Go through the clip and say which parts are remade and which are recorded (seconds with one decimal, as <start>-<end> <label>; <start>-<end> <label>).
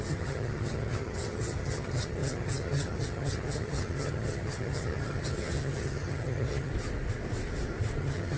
0.0-6.7 remade; 6.7-8.0 recorded; 8.0-8.4 remade